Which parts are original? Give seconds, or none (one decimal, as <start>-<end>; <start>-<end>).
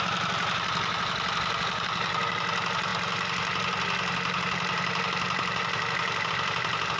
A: 0.0-7.0